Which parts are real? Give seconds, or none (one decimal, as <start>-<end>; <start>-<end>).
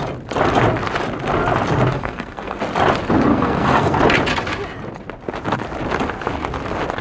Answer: 0.0-2.0; 2.6-3.3; 4.0-7.0